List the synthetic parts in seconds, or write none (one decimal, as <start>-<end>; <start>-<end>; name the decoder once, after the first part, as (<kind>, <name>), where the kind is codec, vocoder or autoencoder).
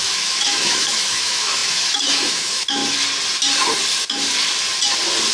0.0-2.8 (autoencoder, DAC-VAE)